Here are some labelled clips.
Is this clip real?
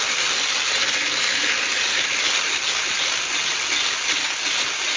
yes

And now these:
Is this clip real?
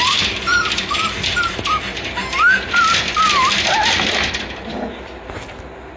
yes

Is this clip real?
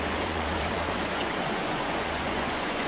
no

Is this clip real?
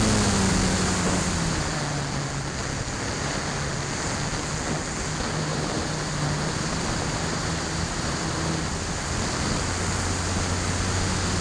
yes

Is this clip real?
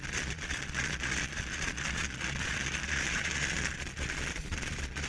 no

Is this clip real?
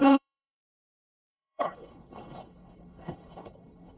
no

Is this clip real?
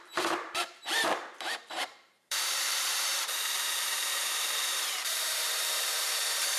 no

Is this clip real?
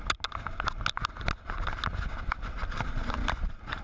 yes